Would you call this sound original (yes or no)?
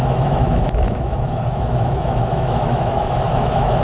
no